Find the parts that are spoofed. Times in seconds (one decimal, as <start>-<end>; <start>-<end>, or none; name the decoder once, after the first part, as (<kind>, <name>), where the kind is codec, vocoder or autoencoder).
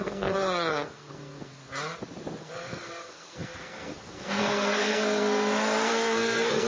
0.0-1.6 (codec, SNAC); 2.4-6.7